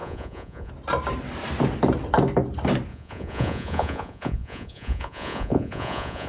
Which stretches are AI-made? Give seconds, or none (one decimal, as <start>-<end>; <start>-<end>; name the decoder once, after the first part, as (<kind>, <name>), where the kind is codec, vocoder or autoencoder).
0.0-0.7 (vocoder, Vocos); 2.9-6.3